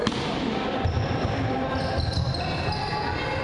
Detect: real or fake real